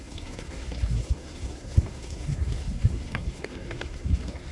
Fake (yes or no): yes